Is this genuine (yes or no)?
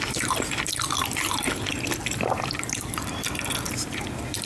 no